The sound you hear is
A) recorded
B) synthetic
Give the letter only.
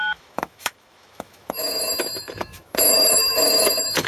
B